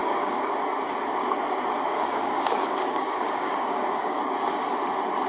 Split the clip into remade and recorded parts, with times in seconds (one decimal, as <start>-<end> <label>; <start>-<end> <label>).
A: 0.0-0.5 remade; 0.5-1.9 recorded; 1.9-4.2 remade; 4.2-5.3 recorded